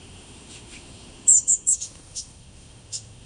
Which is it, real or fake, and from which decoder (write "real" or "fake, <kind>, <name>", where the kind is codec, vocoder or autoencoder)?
fake, autoencoder, DAC-VAE